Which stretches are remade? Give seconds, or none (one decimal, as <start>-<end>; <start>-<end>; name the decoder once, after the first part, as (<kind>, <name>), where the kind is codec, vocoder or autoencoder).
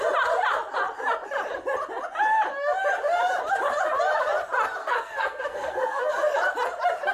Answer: 4.8-6.1 (codec, SNAC)